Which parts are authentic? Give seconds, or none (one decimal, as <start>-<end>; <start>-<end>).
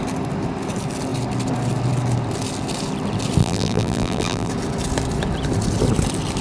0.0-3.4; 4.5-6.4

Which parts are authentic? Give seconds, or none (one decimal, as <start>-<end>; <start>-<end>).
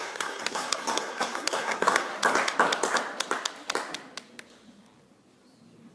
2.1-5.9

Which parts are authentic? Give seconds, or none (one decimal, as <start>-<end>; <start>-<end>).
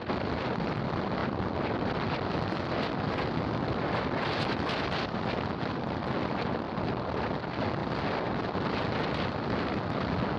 0.0-10.4